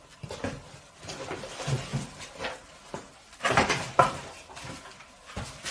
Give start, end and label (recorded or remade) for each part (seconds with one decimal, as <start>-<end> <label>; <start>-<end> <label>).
0.0-1.9 recorded; 1.9-4.2 remade; 4.2-5.7 recorded